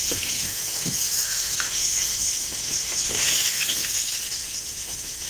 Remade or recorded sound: remade